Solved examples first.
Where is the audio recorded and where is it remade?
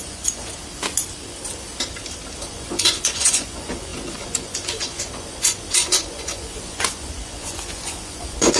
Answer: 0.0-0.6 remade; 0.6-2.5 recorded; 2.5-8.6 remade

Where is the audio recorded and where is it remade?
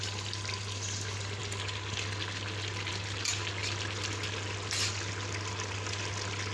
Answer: 0.0-6.5 recorded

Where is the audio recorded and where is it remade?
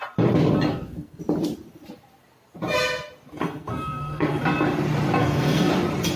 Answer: 0.0-0.7 recorded; 0.7-1.2 remade; 1.2-3.4 recorded; 3.4-4.4 remade; 4.4-5.2 recorded; 5.2-5.7 remade; 5.7-6.2 recorded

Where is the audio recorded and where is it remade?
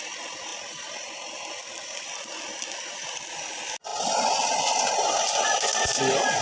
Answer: 0.0-6.4 recorded